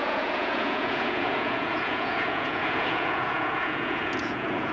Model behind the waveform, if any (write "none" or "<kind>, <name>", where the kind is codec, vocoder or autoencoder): vocoder, Vocos